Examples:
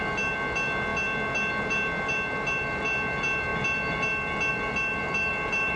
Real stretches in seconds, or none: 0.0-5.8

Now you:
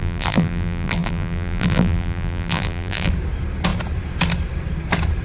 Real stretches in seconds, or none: 3.1-5.2

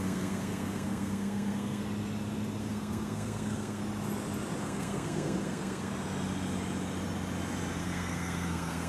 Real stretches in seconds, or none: 1.8-2.6; 3.8-4.6; 5.9-7.8

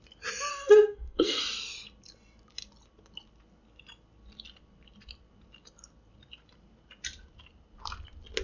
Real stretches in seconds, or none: 0.0-0.5; 1.4-8.4

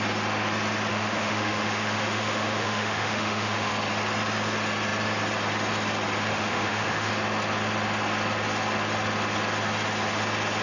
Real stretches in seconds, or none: 0.0-0.9; 3.7-6.3; 7.1-10.6

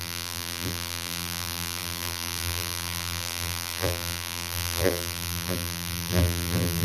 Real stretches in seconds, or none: none

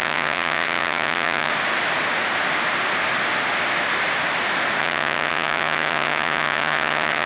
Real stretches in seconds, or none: 1.5-4.8